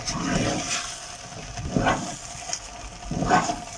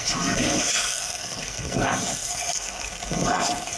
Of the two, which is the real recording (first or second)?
first